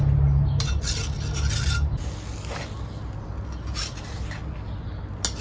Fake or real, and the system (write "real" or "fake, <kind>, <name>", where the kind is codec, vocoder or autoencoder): real